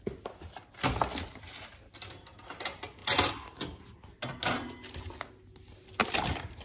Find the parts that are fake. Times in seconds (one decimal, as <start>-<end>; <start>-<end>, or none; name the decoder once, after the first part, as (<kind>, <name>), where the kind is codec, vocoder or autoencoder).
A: none